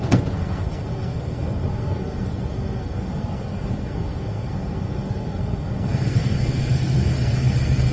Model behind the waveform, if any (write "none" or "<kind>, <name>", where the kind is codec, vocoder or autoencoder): codec, SNAC